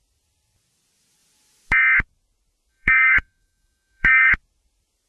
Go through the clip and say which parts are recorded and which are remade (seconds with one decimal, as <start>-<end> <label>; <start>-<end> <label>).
0.0-2.7 recorded; 2.7-4.3 remade; 4.3-5.1 recorded